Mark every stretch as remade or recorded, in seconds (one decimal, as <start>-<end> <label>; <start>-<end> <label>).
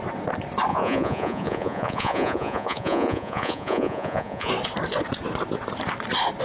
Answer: 0.0-0.7 recorded; 0.7-4.5 remade; 4.5-6.4 recorded